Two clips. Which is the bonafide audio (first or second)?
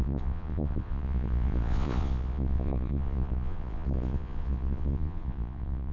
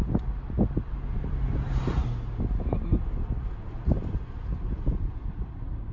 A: second